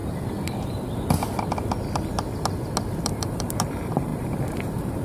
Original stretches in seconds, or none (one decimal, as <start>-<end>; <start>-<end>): 0.0-3.0